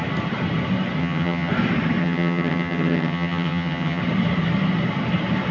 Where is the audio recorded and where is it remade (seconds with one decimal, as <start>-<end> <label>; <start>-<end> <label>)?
0.0-1.0 recorded; 1.0-1.5 remade; 1.5-2.0 recorded; 2.0-4.0 remade; 4.0-5.5 recorded